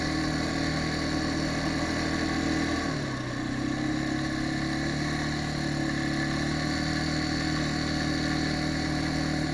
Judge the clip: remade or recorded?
recorded